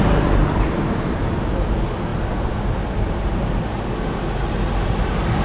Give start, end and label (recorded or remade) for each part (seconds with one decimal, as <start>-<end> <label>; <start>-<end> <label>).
0.0-0.4 recorded; 0.4-1.2 remade; 1.2-5.4 recorded

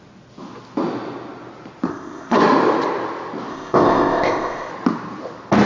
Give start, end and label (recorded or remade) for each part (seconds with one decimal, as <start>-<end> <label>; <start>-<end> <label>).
0.0-1.9 recorded; 1.9-2.4 remade; 2.4-3.5 recorded; 3.5-4.7 remade; 4.7-5.7 recorded